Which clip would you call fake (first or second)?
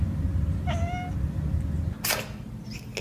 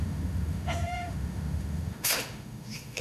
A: second